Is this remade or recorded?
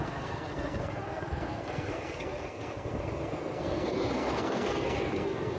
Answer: remade